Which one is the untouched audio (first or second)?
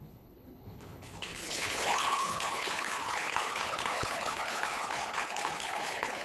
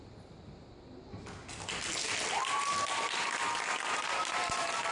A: second